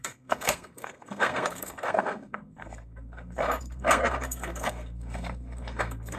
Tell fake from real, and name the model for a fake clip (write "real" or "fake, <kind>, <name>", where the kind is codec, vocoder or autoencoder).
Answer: fake, codec, SNAC